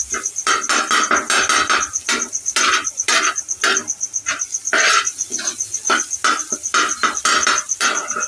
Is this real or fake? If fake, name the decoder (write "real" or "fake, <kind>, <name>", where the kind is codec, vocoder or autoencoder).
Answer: real